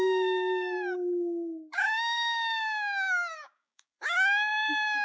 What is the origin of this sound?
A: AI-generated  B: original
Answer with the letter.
A